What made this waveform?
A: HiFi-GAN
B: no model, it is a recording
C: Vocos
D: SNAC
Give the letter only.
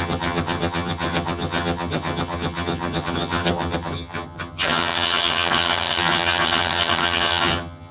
A